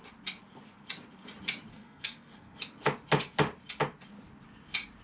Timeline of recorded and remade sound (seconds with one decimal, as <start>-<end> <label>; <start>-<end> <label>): 0.0-1.7 recorded; 1.7-2.6 remade; 2.6-5.0 recorded